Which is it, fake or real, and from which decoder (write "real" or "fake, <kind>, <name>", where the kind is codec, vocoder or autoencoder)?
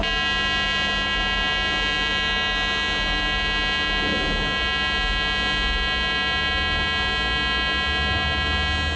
real